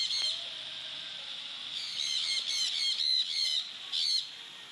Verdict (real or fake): real